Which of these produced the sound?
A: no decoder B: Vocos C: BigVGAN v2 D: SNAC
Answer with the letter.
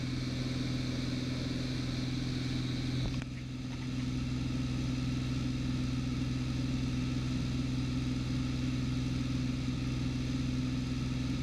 A